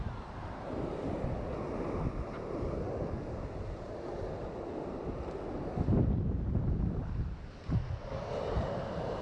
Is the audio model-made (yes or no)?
no